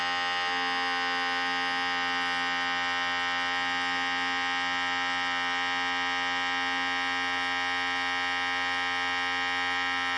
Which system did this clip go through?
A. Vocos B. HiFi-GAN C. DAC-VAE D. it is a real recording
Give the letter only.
D